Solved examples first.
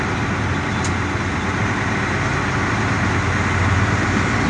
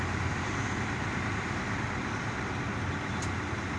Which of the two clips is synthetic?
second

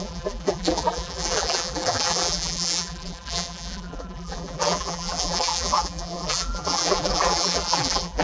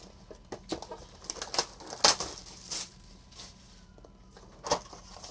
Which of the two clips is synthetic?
first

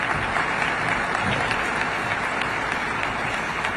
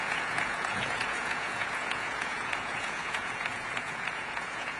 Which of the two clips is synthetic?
second